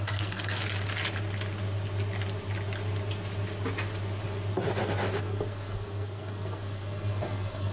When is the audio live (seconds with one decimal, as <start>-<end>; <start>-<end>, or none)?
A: 0.6-5.2